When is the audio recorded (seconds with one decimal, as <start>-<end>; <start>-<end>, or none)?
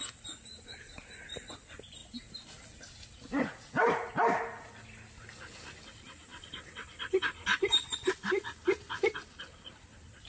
0.0-6.3; 7.9-10.3